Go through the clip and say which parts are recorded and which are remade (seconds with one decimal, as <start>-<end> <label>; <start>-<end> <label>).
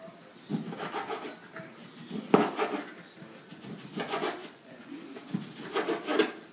0.0-3.9 recorded; 3.9-4.9 remade; 4.9-6.5 recorded